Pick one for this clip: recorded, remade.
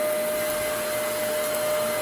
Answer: recorded